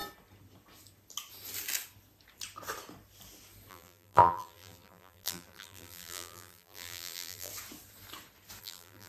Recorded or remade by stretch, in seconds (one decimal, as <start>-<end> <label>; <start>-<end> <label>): 0.0-3.7 recorded; 3.7-7.5 remade; 7.5-8.6 recorded; 8.6-9.1 remade